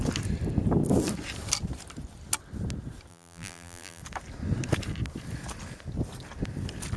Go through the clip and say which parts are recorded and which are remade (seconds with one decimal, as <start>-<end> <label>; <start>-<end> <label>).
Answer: 0.0-3.1 recorded; 3.1-4.0 remade; 4.0-7.0 recorded